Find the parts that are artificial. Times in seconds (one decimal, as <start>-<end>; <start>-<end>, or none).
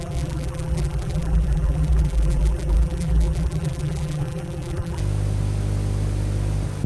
0.0-5.0